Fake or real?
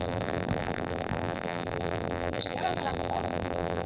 fake